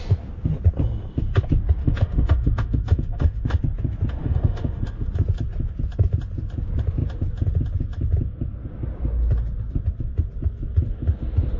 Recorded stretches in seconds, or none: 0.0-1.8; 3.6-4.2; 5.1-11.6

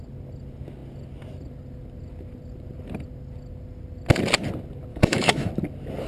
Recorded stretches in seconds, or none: 0.0-4.9; 5.5-6.1

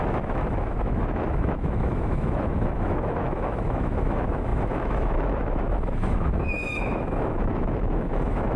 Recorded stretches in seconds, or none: none

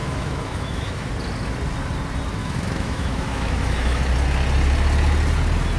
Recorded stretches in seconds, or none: 1.1-2.4; 4.0-5.8